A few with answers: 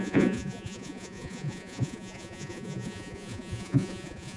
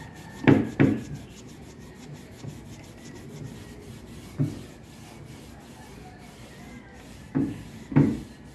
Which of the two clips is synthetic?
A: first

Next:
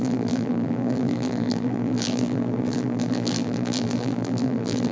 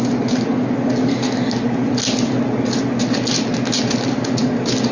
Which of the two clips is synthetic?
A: first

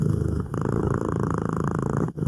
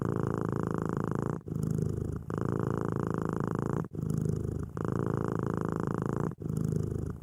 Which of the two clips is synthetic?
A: first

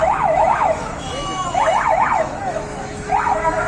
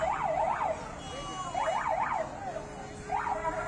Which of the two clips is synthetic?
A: first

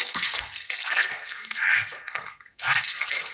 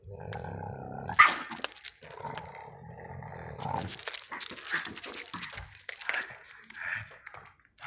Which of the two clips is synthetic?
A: first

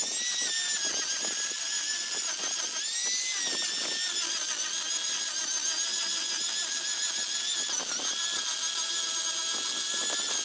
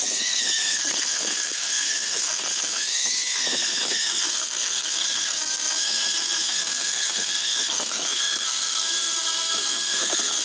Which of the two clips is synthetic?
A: second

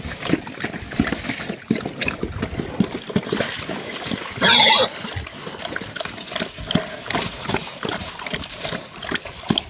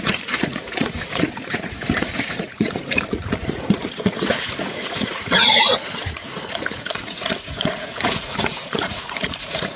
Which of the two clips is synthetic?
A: second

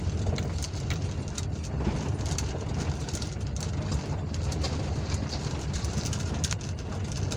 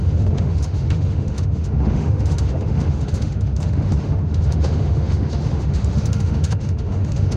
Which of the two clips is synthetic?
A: second